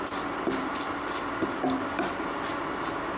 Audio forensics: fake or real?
real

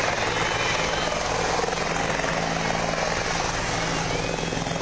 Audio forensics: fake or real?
real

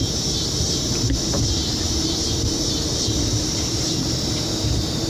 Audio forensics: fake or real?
fake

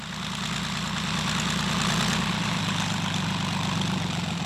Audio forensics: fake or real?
real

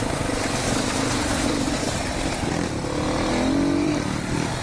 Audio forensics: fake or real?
fake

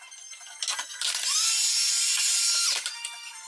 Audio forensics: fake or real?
real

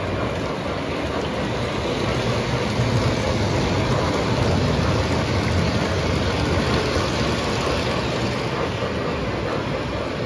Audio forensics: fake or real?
real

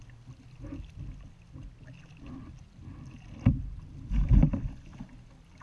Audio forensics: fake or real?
real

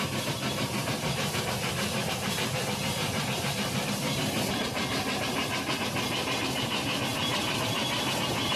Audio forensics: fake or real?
fake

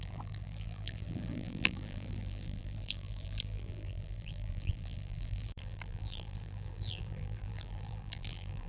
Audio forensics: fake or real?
fake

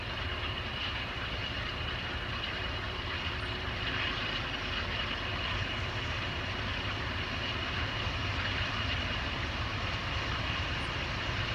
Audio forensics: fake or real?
fake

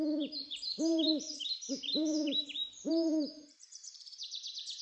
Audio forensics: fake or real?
fake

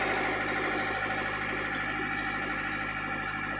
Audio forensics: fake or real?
real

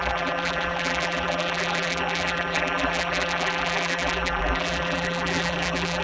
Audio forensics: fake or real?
fake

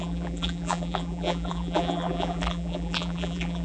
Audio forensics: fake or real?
fake